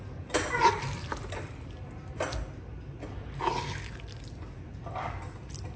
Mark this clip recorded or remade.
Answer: recorded